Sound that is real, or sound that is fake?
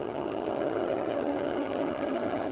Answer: fake